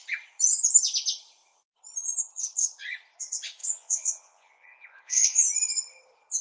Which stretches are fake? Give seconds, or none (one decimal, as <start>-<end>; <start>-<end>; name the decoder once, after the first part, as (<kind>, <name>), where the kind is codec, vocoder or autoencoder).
3.6-5.5 (vocoder, Vocos)